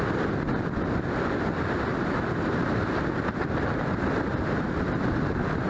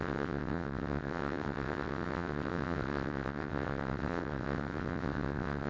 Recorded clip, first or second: first